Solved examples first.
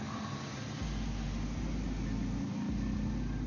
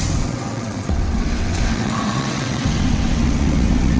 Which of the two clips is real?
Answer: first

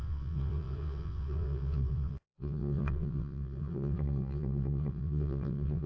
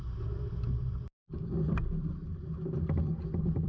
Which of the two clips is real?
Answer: second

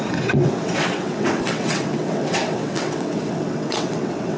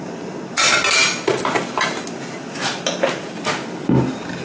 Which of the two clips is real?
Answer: second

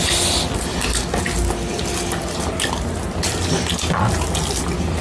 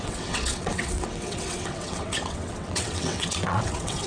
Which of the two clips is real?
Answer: first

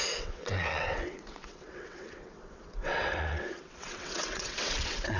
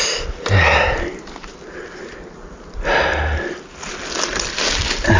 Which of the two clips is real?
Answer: second